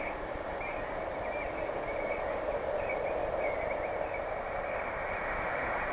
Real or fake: real